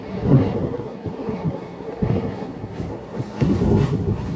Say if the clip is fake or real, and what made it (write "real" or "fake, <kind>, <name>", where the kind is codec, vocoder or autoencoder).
fake, codec, SNAC